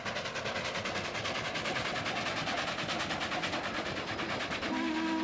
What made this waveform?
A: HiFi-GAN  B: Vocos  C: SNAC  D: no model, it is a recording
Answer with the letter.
D